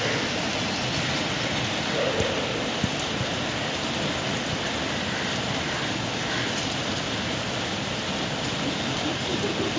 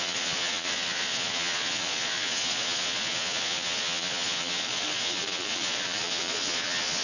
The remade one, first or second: second